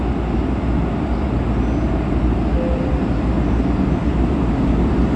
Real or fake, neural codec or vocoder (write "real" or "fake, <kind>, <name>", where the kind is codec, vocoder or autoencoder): real